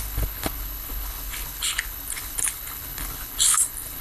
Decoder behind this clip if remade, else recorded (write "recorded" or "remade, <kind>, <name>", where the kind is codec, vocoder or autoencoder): remade, codec, HILCodec